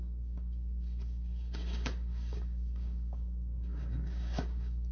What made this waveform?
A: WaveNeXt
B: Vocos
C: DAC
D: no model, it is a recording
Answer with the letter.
C